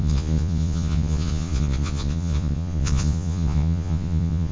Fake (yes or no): yes